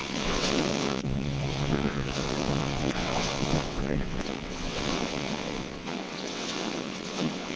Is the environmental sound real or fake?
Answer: fake